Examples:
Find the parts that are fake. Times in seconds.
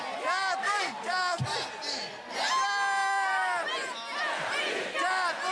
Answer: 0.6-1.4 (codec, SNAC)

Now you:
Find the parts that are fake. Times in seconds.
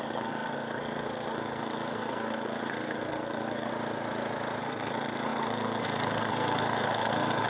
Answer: 0.0-3.7 (codec, SNAC); 4.6-7.5